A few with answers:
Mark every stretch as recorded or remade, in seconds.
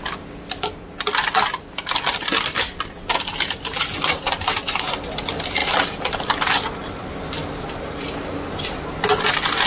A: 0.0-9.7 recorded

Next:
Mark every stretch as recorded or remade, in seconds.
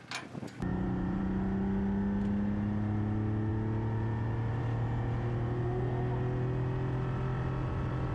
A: 0.0-0.7 recorded; 0.7-1.2 remade; 1.2-8.1 recorded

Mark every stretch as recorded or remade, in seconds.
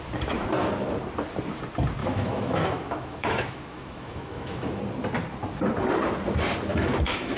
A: 0.0-2.0 recorded; 2.0-4.8 remade; 4.8-6.7 recorded; 6.7-7.4 remade